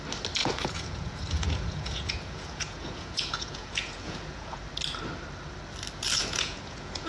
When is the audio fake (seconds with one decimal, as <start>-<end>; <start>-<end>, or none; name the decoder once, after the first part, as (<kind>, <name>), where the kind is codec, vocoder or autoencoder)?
0.4-4.6 (vocoder, Vocos); 6.2-7.1